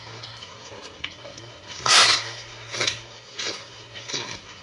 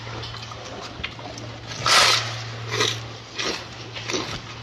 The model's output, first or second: first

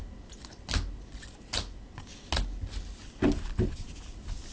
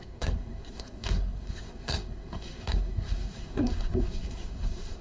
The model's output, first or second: second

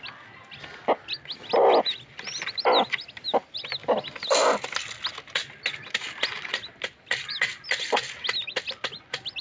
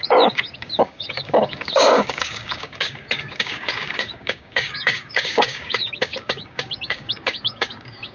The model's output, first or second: second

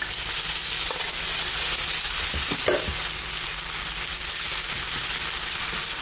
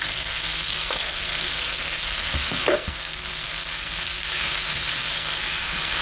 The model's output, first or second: second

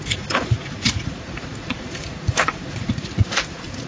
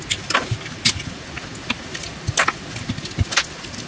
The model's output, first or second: first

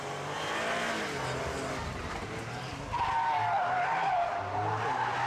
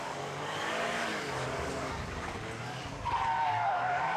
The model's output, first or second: second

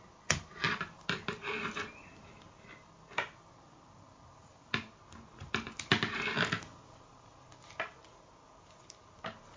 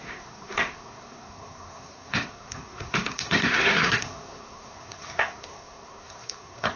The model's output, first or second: second